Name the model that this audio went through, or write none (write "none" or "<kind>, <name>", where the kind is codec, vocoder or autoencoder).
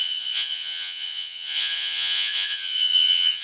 vocoder, Vocos